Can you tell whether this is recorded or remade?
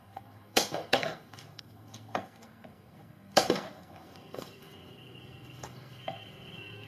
remade